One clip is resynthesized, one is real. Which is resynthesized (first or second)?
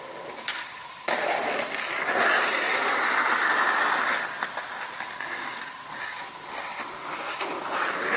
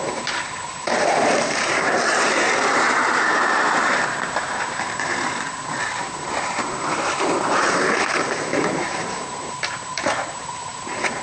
second